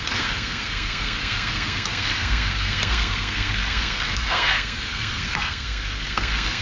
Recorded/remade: remade